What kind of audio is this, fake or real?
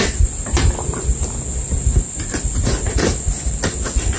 real